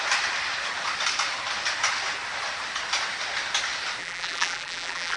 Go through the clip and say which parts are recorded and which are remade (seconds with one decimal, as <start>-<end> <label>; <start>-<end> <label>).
0.0-4.0 recorded; 4.0-5.2 remade